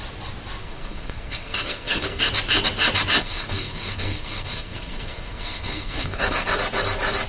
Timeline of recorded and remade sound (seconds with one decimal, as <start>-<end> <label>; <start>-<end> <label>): 0.0-0.6 recorded; 0.6-2.2 remade; 2.2-3.2 recorded; 3.2-6.5 remade; 6.5-7.3 recorded